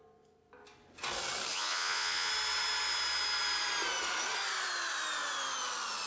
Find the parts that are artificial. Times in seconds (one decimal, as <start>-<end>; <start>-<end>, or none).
1.5-2.3